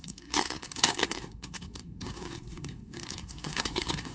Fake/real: fake